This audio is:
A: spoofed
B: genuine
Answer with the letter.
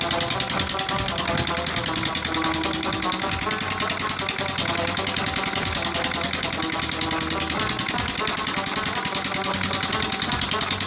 B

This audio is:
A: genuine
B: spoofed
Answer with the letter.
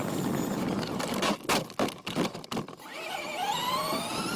A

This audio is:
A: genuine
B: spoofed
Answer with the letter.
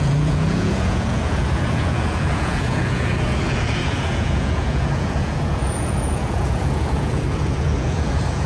B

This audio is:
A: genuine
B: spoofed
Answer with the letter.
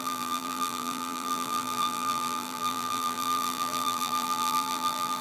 B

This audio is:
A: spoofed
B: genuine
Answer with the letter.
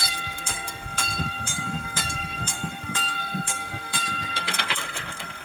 A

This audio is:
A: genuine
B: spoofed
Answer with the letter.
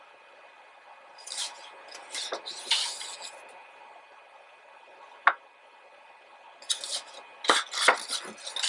A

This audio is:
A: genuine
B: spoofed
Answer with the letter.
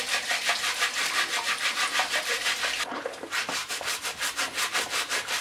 B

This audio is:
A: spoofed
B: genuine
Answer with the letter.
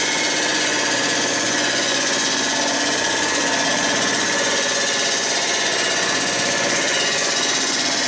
A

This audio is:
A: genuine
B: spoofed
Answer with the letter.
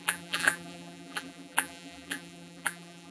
B